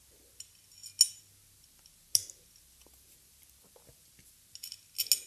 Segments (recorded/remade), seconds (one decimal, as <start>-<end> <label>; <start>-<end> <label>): 0.0-5.3 recorded

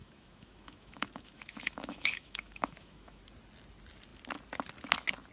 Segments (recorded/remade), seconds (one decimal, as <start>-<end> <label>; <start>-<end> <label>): 0.0-3.2 remade; 3.2-5.3 recorded

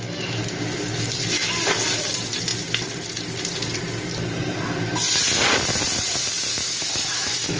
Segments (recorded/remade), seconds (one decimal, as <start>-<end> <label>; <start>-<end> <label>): 0.0-6.5 recorded; 6.5-7.6 remade

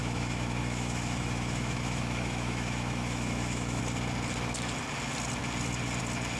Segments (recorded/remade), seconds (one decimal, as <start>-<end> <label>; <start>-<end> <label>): 0.0-3.8 remade; 3.8-6.4 recorded

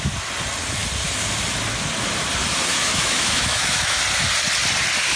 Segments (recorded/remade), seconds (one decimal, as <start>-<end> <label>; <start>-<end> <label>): 0.0-2.8 recorded; 2.8-4.0 remade; 4.0-5.2 recorded